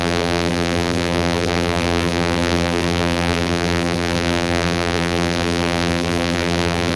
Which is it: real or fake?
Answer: fake